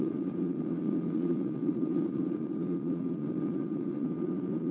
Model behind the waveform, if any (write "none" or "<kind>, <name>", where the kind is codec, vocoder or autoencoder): vocoder, Vocos